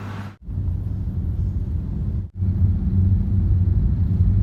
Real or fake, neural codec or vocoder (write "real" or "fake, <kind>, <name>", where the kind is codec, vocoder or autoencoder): real